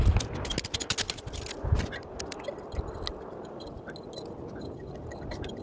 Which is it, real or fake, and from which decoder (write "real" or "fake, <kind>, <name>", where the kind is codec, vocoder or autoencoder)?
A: real